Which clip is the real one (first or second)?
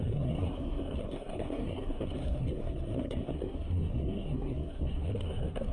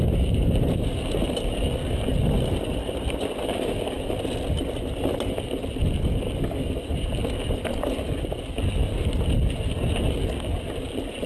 second